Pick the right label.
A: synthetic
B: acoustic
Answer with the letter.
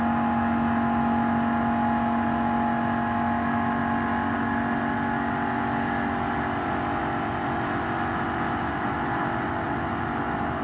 B